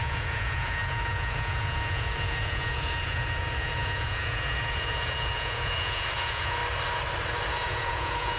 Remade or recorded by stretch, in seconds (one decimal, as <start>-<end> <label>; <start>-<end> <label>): 0.0-6.6 remade; 6.6-7.5 recorded; 7.5-8.4 remade